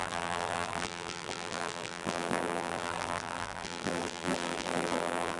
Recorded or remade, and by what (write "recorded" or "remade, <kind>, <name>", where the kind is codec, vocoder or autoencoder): remade, vocoder, BigVGAN v2